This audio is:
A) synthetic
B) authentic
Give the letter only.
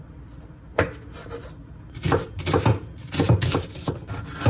B